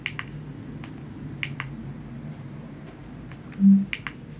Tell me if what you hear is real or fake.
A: real